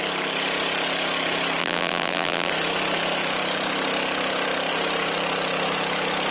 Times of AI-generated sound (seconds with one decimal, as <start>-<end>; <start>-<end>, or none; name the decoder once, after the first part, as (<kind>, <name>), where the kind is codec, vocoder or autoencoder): 1.6-2.5 (vocoder, BigVGAN v2)